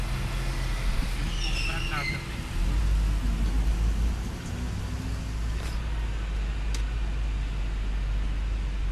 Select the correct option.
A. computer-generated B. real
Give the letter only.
B